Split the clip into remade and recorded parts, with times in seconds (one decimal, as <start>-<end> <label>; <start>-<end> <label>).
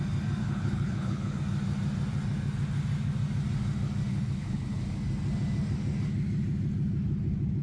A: 0.0-0.4 recorded; 0.4-1.4 remade; 1.4-4.1 recorded; 4.1-4.9 remade; 4.9-7.6 recorded